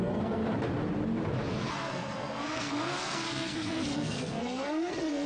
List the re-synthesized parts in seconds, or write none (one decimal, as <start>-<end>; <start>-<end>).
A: 0.0-0.4; 1.7-5.3